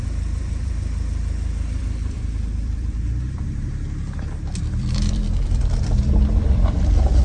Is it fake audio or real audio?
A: fake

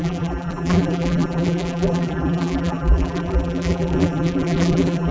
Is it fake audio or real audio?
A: fake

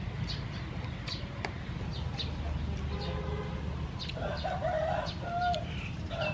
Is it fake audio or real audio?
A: real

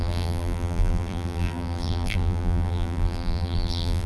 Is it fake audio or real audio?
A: fake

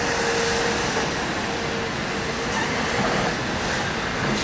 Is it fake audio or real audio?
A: real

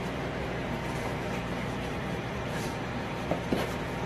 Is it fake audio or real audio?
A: fake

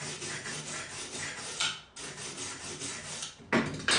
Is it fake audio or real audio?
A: real